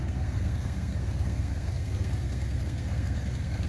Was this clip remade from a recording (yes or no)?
yes